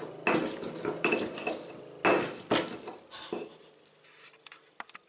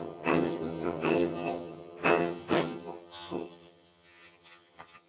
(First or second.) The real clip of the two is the first